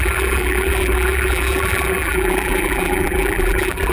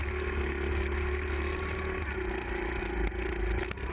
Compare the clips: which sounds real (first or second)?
second